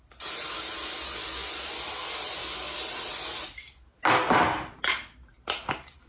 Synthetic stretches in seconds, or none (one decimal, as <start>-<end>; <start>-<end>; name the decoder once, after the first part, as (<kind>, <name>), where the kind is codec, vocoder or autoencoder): none